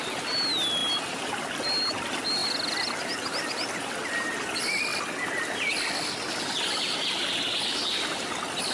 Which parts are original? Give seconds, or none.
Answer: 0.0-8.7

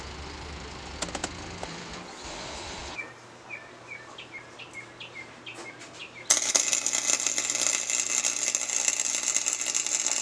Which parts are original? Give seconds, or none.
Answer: 0.0-10.2

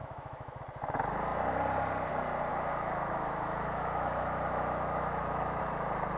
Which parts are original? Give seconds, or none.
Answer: 0.6-2.5; 5.6-6.2

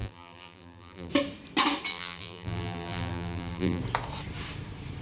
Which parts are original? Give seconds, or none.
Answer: 1.1-1.9; 3.8-5.0

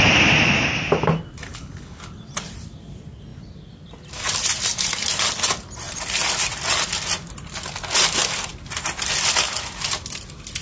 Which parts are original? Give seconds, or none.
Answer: 0.0-1.5; 2.0-10.6